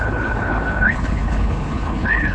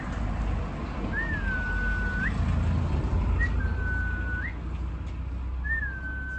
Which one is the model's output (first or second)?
first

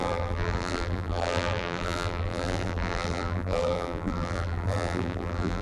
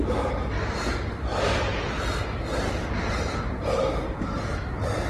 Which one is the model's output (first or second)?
first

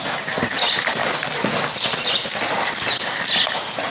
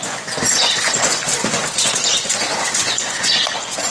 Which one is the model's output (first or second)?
second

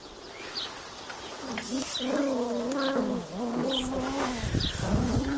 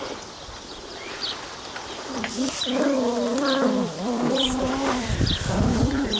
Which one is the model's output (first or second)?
second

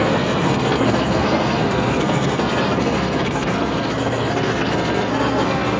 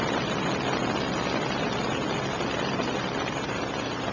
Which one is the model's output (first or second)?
first